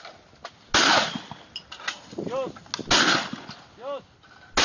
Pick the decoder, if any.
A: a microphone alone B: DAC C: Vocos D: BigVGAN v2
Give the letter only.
A